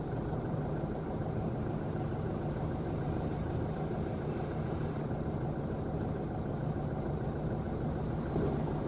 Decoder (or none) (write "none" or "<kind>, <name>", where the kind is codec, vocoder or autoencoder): vocoder, BigVGAN v2